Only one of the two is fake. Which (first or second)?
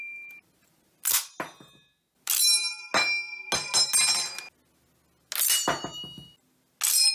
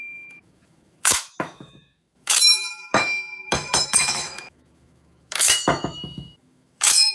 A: second